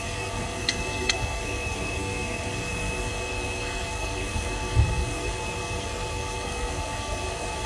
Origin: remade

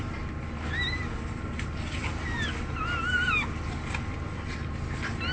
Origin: recorded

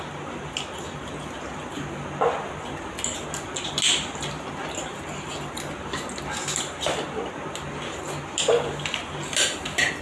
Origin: recorded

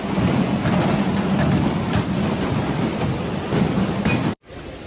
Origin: remade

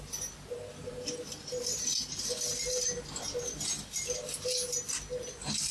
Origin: recorded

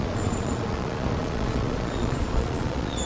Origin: remade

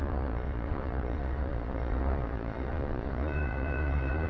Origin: remade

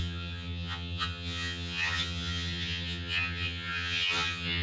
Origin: remade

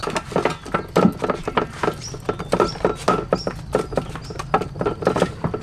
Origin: recorded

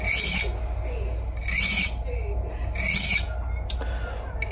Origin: recorded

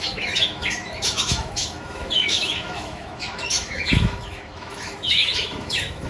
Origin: remade